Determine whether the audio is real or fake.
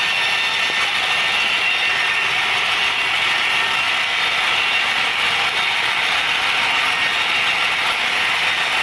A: real